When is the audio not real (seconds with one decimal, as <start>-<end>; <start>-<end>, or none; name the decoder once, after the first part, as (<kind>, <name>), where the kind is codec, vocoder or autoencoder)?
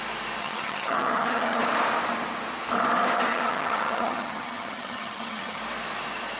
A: 0.4-1.6 (vocoder, HiFi-GAN); 3.3-5.6